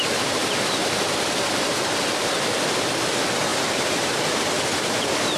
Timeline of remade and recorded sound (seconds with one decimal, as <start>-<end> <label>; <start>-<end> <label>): 0.0-3.5 recorded; 3.5-4.2 remade; 4.2-4.7 recorded; 4.7-5.4 remade